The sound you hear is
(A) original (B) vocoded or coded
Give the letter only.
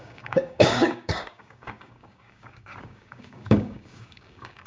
B